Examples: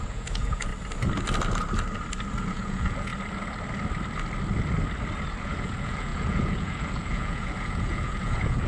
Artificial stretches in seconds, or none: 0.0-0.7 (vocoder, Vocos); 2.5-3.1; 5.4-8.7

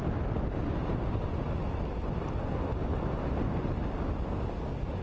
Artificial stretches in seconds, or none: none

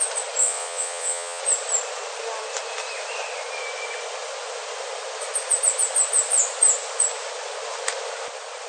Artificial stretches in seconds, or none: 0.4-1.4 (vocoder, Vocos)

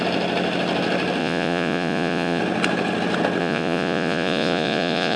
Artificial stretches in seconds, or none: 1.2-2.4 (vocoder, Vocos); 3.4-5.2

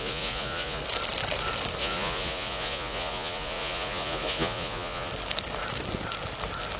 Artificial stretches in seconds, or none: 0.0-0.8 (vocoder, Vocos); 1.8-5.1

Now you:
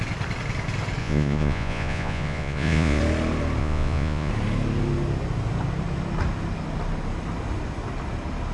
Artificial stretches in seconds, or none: 1.0-3.0 (vocoder, Vocos); 3.6-4.3